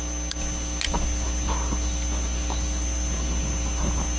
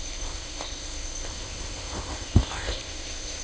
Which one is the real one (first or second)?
first